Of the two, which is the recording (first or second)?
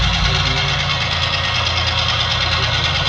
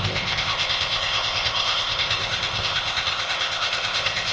first